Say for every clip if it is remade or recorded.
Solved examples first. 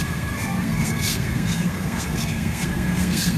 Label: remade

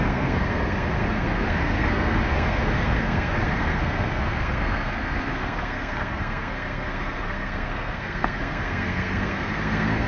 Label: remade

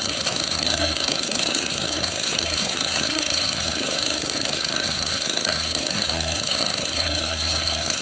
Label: remade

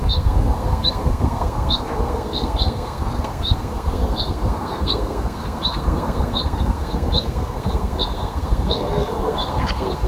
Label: remade